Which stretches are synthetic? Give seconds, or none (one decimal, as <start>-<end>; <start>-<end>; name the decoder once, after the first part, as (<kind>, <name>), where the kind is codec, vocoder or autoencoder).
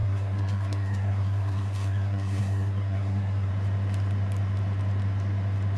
0.0-3.5 (codec, SNAC)